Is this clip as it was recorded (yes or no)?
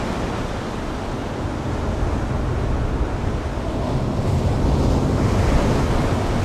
yes